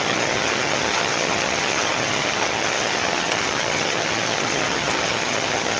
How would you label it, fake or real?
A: fake